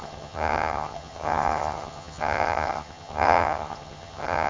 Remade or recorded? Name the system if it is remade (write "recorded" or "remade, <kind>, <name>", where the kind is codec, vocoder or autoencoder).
remade, vocoder, HiFi-GAN